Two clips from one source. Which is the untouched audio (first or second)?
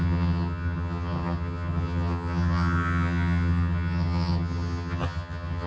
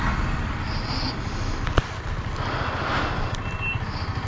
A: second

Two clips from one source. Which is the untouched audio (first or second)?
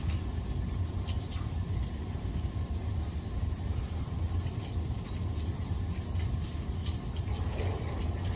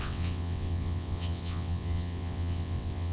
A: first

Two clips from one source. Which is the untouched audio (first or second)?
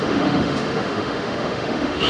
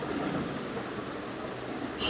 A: second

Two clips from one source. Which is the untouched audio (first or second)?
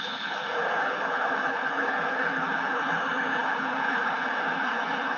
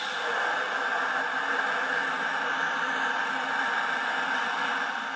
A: second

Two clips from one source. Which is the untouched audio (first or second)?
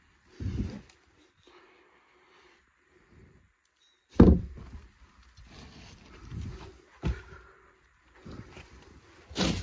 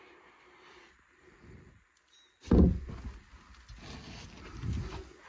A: second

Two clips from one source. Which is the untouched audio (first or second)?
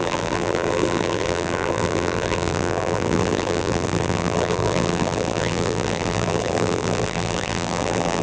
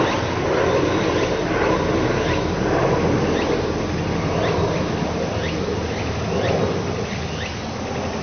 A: second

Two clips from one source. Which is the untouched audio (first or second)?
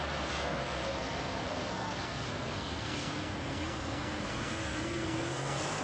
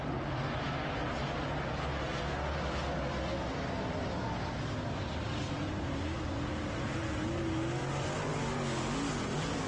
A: second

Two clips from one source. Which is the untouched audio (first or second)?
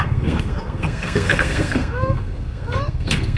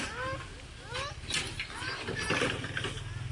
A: second